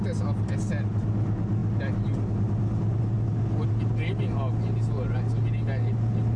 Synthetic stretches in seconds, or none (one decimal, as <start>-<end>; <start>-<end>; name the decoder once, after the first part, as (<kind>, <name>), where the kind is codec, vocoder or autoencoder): none